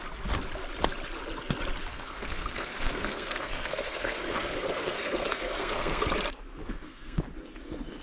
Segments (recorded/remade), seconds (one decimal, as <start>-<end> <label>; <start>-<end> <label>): 0.0-1.9 recorded; 1.9-6.0 remade; 6.0-6.6 recorded; 6.6-7.2 remade; 7.2-8.0 recorded